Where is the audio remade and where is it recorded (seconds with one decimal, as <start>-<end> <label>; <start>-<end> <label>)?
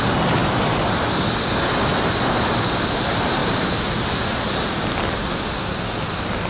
0.0-0.4 recorded; 0.4-1.1 remade; 1.1-3.4 recorded; 3.4-4.8 remade; 4.8-6.5 recorded